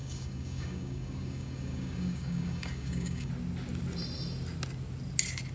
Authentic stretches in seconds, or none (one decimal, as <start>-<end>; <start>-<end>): 3.3-5.5